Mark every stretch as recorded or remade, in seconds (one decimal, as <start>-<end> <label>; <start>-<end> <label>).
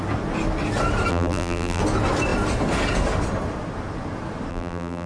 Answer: 0.0-1.1 recorded; 1.1-1.8 remade; 1.8-4.5 recorded; 4.5-5.1 remade